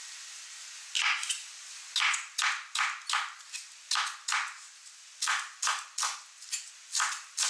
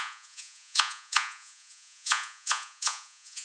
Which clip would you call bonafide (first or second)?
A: first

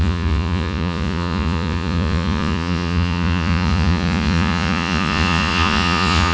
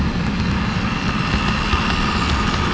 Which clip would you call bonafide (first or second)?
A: second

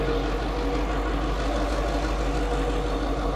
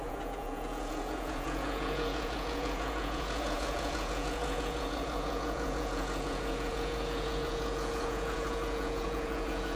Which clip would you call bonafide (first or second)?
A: first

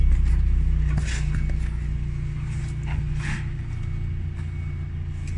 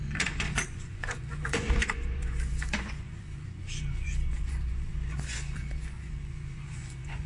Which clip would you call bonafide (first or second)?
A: first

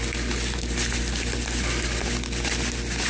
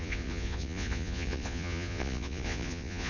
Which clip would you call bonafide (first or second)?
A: first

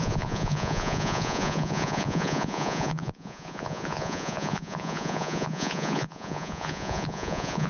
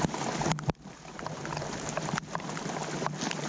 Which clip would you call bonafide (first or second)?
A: second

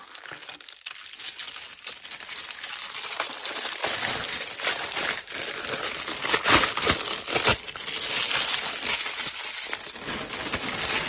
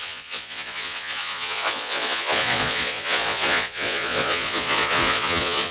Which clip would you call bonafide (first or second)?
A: first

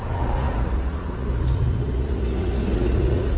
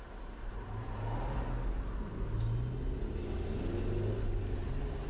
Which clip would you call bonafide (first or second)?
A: second